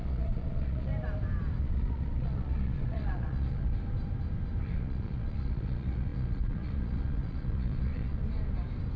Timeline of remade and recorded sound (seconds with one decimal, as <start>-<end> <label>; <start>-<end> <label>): 0.0-0.9 remade; 0.9-1.6 recorded; 1.6-3.7 remade; 3.7-4.6 recorded; 4.6-8.2 remade; 8.2-9.0 recorded